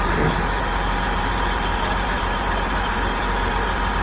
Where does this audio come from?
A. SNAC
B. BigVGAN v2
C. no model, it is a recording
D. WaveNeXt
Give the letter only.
B